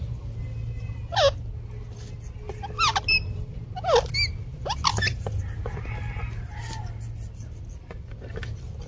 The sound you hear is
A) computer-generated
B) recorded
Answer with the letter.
B